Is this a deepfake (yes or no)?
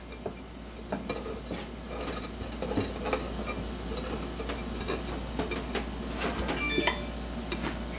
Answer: no